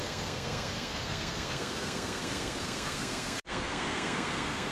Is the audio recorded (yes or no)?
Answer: no